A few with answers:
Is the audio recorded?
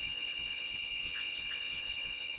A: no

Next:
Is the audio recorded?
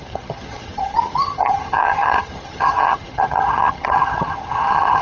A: no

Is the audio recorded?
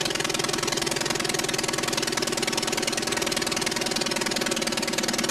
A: yes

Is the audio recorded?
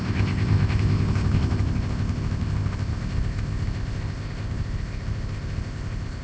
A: no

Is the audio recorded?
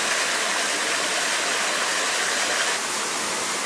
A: yes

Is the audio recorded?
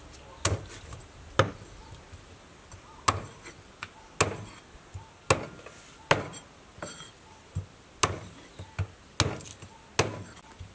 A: yes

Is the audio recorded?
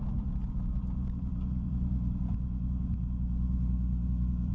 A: no